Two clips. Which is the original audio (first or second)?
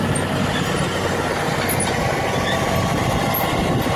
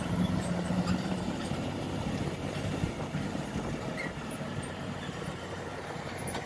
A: first